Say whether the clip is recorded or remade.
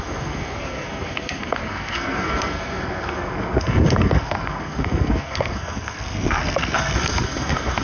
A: remade